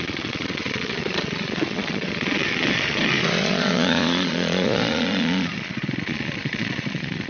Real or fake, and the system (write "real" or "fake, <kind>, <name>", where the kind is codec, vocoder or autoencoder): fake, vocoder, Vocos